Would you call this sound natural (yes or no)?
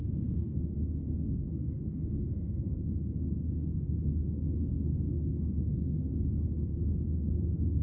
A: no